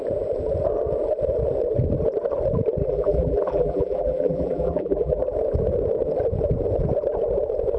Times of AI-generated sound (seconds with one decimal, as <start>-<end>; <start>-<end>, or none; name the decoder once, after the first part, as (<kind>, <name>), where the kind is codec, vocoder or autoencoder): 2.8-5.2 (vocoder, BigVGAN v2)